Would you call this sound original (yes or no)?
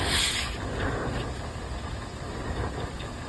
yes